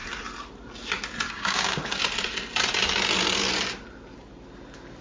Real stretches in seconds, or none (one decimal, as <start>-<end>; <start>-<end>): 0.0-1.3; 1.8-5.0